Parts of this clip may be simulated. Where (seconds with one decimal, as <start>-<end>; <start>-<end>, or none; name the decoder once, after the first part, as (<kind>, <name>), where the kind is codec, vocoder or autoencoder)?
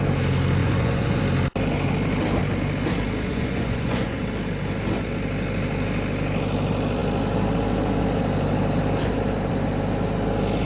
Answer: 0.6-1.2 (vocoder, Vocos); 3.3-4.2